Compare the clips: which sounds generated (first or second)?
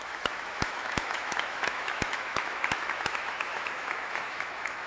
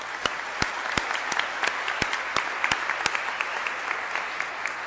first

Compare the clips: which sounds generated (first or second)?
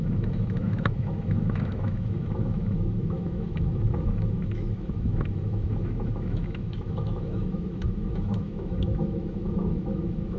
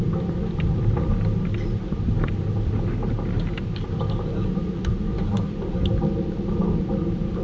first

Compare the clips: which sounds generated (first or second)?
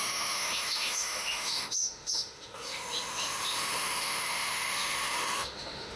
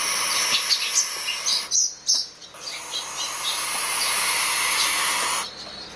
first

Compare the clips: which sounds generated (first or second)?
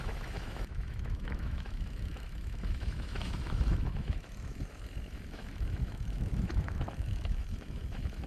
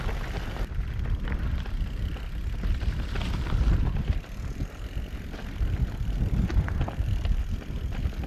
first